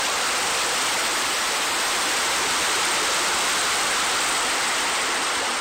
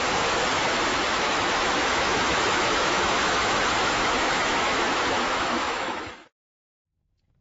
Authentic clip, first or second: first